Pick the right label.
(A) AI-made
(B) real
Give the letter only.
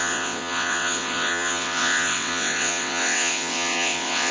A